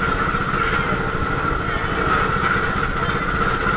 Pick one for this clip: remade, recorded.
recorded